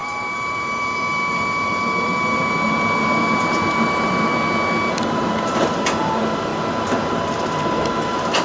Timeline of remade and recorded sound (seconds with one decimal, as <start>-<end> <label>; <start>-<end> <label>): 0.0-4.3 remade; 4.3-5.1 recorded; 5.1-6.5 remade; 6.5-7.1 recorded; 7.1-8.4 remade